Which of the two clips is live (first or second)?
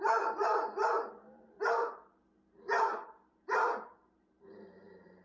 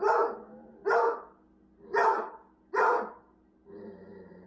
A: second